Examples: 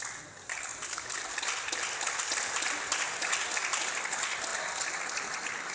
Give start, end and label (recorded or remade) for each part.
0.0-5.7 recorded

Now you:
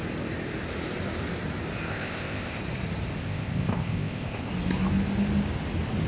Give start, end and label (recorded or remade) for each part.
0.0-1.9 recorded; 1.9-2.6 remade; 2.6-3.2 recorded; 3.2-4.5 remade; 4.5-6.1 recorded

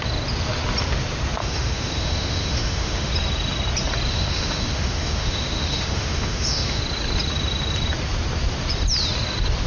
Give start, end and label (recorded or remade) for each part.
0.0-1.4 recorded; 1.4-3.1 remade; 3.1-4.1 recorded; 4.1-6.8 remade; 6.8-9.7 recorded

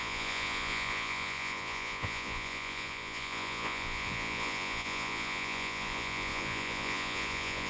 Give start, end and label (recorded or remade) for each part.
0.0-7.7 remade